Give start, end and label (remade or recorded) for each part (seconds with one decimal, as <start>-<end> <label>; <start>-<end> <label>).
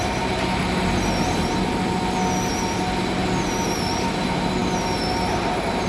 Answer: 0.0-5.9 recorded